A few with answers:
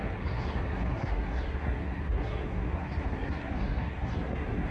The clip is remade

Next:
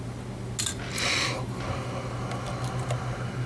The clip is recorded